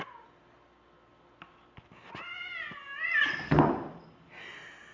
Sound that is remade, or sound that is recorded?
recorded